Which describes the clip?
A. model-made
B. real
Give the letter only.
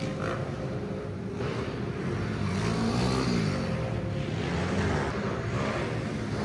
B